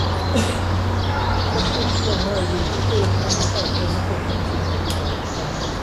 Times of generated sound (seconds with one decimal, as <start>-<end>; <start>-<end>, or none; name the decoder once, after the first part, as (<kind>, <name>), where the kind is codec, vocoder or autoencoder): 2.5-4.3 (codec, DAC)

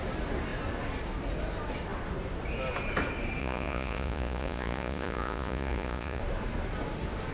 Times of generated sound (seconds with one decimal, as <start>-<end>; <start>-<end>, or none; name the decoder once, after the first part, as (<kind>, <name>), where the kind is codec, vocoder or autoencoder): 3.4-6.2 (vocoder, Vocos)